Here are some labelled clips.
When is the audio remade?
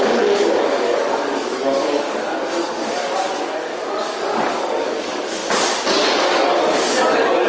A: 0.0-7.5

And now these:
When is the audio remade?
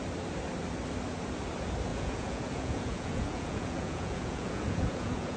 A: 1.9-5.4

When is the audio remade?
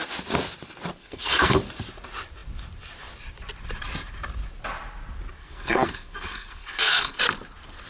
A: 1.0-1.6; 5.4-7.2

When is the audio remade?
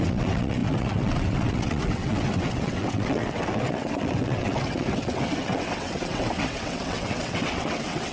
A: 0.0-8.1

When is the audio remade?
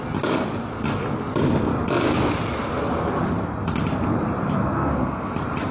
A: 4.6-5.3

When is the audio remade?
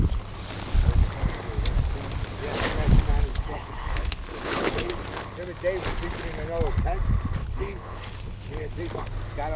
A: 3.3-4.9; 7.4-8.8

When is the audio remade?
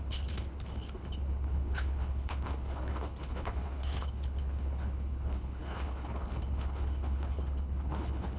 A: 0.0-8.4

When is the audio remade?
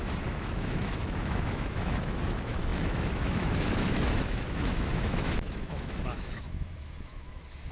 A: 0.0-7.7